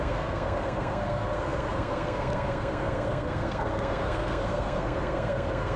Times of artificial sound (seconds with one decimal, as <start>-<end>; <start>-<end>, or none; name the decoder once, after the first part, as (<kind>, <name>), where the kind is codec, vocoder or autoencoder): 0.0-5.8 (codec, SNAC)